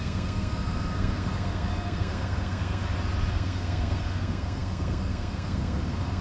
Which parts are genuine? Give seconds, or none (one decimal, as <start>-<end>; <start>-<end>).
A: 2.8-3.3